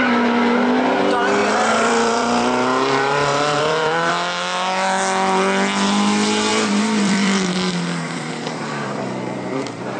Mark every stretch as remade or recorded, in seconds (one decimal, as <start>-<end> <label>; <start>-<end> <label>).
0.0-1.4 recorded; 1.4-4.1 remade; 4.1-6.5 recorded; 6.5-10.0 remade